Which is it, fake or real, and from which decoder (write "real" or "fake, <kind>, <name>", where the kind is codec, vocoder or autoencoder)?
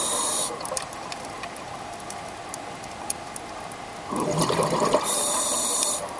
real